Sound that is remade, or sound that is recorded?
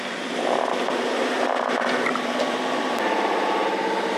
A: remade